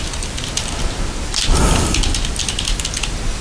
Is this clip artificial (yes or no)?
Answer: no